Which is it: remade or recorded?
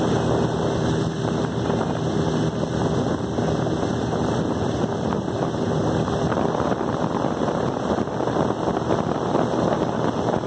recorded